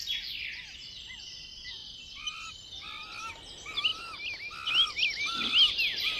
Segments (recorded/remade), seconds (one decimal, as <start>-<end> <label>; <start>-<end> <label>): 0.0-1.8 recorded; 1.8-2.5 remade; 2.5-3.9 recorded; 3.9-4.7 remade; 4.7-6.2 recorded